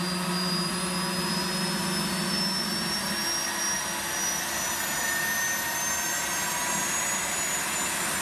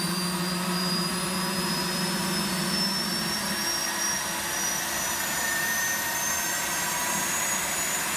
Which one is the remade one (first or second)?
second